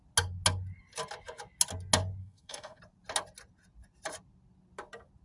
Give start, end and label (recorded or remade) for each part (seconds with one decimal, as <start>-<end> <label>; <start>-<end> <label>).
0.0-2.2 recorded; 2.2-2.8 remade; 2.8-5.2 recorded